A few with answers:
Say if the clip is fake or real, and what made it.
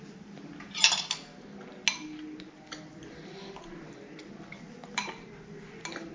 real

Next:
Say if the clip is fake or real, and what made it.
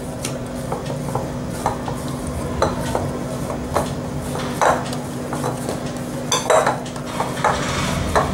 real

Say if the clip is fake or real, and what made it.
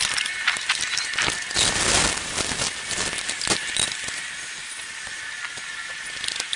fake, vocoder, BigVGAN v2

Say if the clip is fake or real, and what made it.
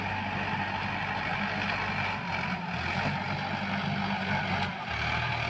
real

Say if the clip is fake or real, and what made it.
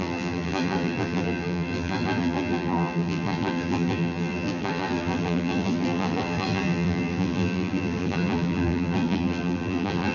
fake, vocoder, BigVGAN v2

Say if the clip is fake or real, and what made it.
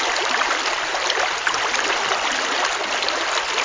real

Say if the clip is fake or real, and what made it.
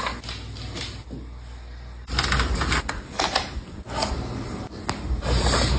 real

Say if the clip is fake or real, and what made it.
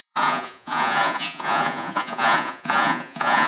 fake, vocoder, Vocos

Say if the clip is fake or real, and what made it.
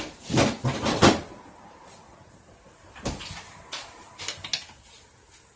real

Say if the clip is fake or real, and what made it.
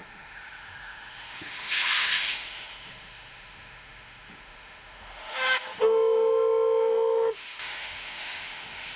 fake, autoencoder, DAC-VAE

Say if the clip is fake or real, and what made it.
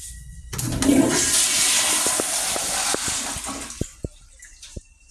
real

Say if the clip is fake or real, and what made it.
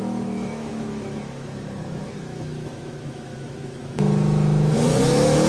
fake, autoencoder, DAC-VAE